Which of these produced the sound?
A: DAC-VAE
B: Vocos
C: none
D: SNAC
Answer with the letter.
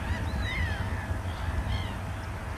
C